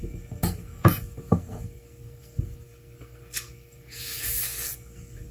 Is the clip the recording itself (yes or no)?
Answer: no